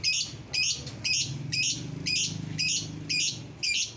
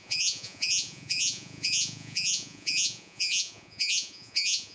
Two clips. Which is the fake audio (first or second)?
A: second